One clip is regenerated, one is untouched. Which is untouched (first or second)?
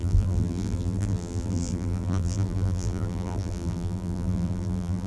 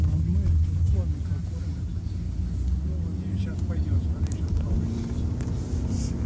second